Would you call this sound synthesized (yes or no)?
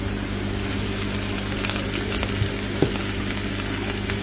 no